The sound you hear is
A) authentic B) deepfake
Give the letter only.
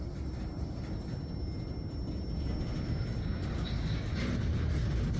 A